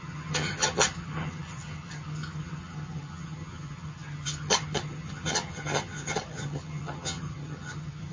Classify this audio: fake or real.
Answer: fake